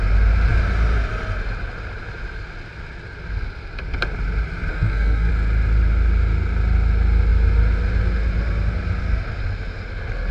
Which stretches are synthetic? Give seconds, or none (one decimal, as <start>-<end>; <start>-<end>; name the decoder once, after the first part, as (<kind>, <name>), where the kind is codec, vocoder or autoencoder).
4.7-5.3 (codec, SNAC)